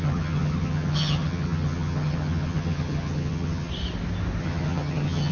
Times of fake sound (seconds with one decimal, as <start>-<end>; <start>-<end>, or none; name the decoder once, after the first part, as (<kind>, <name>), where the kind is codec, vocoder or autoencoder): 0.0-3.7 (vocoder, HiFi-GAN); 4.4-5.3